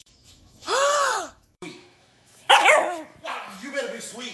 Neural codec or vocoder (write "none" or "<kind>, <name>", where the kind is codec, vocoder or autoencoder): autoencoder, DAC-VAE